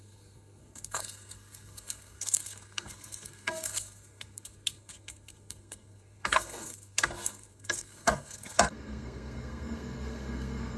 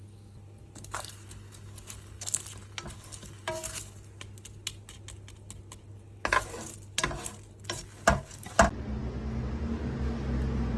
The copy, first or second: first